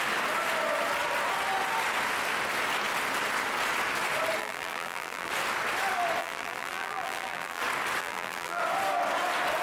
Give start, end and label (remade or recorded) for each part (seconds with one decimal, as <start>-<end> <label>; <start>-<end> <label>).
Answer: 0.0-4.4 recorded; 4.4-5.3 remade; 5.3-6.2 recorded; 6.2-7.6 remade; 7.6-8.0 recorded; 8.0-8.6 remade; 8.6-9.6 recorded